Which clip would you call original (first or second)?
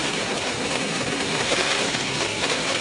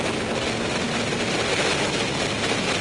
second